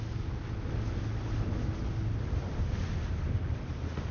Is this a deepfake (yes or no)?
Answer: no